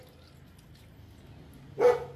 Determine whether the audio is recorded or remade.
recorded